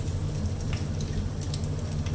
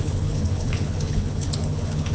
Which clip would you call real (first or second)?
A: first